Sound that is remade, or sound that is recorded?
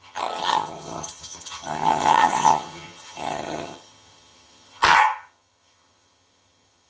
remade